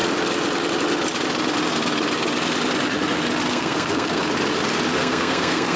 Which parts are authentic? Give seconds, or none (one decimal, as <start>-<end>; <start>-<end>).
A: 0.0-3.5; 4.2-5.0